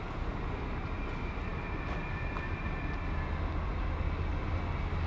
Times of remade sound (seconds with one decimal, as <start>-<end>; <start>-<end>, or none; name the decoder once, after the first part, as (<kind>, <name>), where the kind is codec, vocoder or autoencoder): none